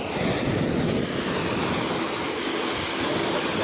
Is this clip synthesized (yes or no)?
no